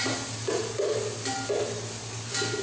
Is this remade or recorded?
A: recorded